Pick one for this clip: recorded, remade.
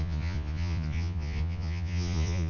remade